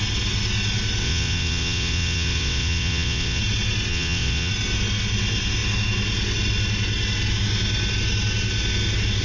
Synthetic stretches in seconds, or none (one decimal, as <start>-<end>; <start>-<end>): 1.0-3.4; 3.9-4.5